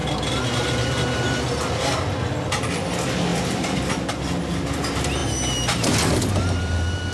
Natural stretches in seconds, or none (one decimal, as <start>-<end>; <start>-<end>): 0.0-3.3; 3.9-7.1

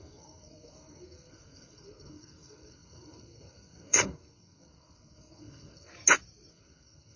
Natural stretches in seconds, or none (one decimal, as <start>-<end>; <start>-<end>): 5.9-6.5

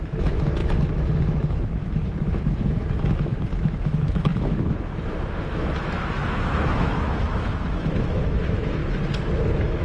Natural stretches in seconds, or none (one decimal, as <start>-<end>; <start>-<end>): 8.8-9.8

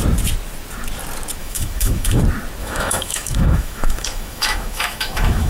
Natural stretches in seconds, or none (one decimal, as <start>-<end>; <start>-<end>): 0.0-1.4; 2.2-2.6

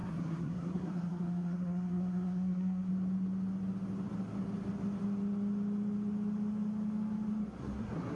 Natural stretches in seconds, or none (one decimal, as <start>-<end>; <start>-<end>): 2.9-7.6

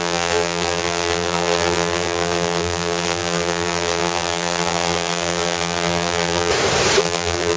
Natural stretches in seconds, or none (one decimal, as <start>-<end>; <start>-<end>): 6.5-7.0

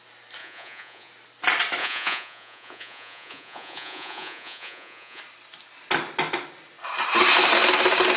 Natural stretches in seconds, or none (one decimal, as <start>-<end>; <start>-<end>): 0.0-0.4; 1.1-1.8; 5.2-8.2